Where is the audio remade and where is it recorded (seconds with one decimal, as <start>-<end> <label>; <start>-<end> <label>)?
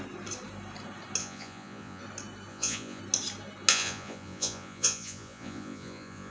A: 0.0-1.2 recorded; 1.2-2.0 remade; 2.0-2.5 recorded; 2.5-3.0 remade; 3.0-3.7 recorded; 3.7-6.3 remade